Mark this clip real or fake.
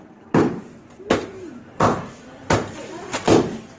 real